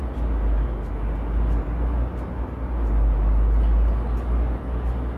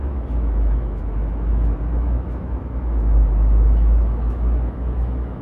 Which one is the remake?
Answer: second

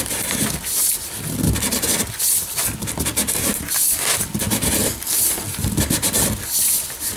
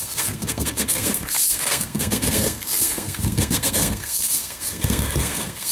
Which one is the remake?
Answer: second